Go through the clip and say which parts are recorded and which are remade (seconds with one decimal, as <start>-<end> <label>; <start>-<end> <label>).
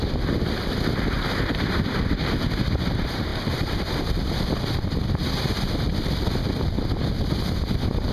0.0-8.1 remade